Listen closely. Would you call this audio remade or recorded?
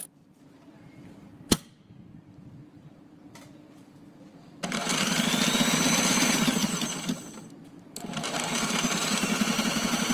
remade